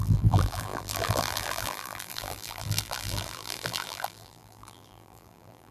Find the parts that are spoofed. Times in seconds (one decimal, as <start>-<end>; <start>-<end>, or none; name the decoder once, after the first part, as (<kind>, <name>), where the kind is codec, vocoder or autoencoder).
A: 0.0-5.7 (vocoder, BigVGAN v2)

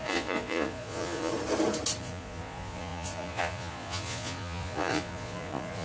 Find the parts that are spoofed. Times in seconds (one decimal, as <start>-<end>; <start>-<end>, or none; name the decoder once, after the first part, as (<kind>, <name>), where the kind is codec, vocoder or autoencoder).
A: 0.0-1.3 (vocoder, Vocos); 2.0-5.8